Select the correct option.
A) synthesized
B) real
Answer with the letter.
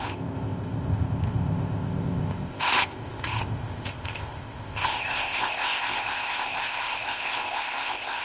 A